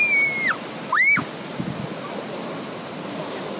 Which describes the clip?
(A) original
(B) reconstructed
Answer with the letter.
A